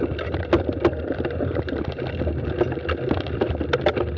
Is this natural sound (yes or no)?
yes